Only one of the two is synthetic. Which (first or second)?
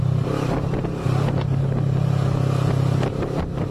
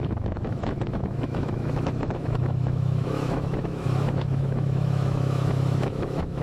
second